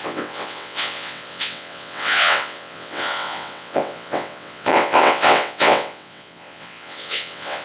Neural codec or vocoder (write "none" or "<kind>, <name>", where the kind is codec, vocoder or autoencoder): vocoder, WaveNeXt